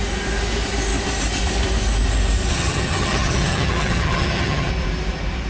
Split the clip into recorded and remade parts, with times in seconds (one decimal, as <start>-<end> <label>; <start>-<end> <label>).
0.0-2.5 recorded; 2.5-4.7 remade; 4.7-5.5 recorded